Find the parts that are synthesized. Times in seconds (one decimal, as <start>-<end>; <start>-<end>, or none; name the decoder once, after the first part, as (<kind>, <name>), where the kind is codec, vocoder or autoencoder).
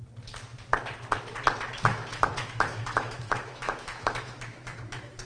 1.9-5.3 (autoencoder, DAC-VAE)